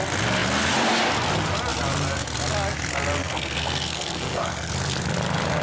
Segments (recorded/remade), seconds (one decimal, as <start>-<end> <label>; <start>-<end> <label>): 0.0-3.2 recorded; 3.2-4.7 remade; 4.7-5.6 recorded